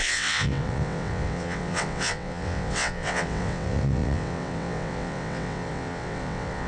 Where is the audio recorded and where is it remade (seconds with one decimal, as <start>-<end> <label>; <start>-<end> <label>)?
0.0-6.7 remade